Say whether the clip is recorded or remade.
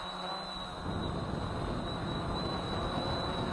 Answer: recorded